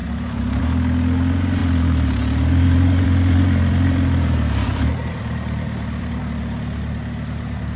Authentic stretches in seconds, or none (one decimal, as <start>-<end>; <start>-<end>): 0.6-1.6; 6.2-7.8